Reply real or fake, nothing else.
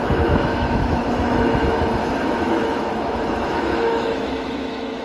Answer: fake